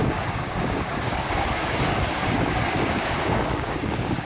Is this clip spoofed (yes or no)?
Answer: yes